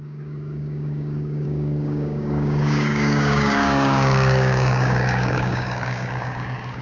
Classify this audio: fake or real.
fake